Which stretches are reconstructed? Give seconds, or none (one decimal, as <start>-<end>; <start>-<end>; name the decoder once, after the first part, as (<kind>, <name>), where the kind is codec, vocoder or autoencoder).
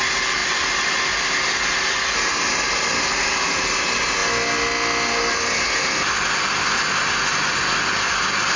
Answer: none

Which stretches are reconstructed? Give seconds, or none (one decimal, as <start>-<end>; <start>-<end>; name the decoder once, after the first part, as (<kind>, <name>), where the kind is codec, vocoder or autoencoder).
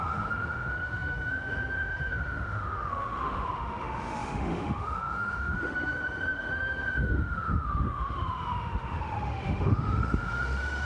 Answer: 0.0-10.9 (autoencoder, DAC-VAE)